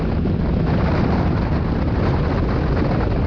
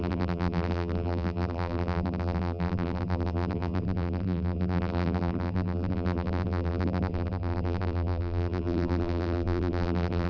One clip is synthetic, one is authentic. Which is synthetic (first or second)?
second